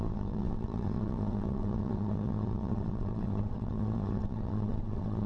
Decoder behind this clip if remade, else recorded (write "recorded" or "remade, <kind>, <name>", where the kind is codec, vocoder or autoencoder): remade, vocoder, WaveNeXt